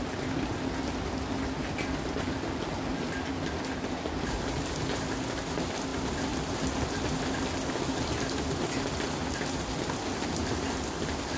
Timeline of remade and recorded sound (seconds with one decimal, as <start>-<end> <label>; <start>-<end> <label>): 0.0-11.4 recorded

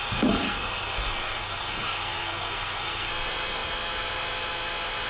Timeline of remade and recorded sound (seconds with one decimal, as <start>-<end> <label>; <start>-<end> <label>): 0.0-3.1 remade; 3.1-5.1 recorded

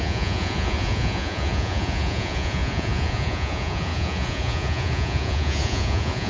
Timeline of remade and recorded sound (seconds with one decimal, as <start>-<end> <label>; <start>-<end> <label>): 0.0-6.3 remade